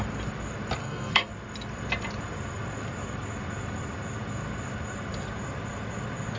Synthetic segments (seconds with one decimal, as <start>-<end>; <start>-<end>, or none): 0.8-1.3